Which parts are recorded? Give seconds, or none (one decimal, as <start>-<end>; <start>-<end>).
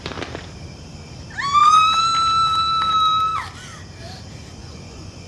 0.0-4.6